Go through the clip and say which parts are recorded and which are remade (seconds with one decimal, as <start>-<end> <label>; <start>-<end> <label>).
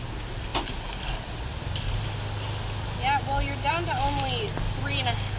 0.0-5.4 recorded